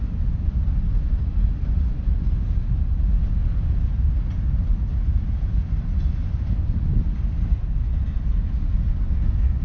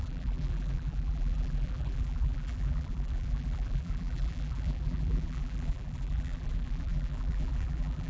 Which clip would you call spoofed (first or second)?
second